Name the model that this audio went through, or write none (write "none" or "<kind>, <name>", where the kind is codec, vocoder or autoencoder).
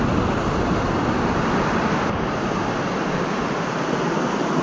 none